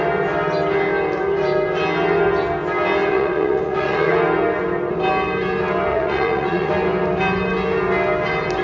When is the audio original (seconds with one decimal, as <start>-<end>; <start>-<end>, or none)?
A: 0.0-3.1; 4.1-5.9; 6.7-8.6